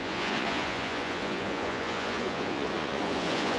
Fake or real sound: fake